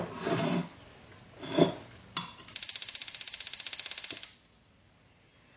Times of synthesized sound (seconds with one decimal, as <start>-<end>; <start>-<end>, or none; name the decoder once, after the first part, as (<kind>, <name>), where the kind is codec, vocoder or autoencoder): none